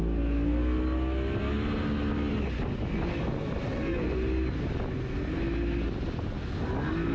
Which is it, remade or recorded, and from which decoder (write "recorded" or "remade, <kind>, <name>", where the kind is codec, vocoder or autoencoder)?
recorded